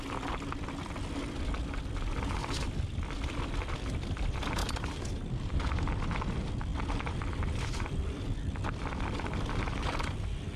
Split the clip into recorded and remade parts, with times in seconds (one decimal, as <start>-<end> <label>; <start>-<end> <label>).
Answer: 0.0-4.6 recorded; 4.6-5.9 remade; 5.9-10.6 recorded